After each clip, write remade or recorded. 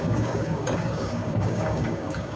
remade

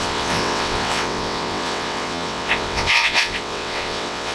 remade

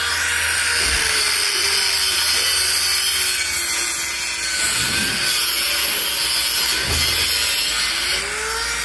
recorded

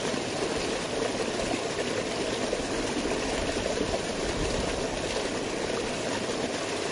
recorded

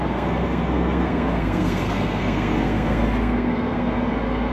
remade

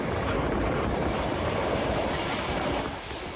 recorded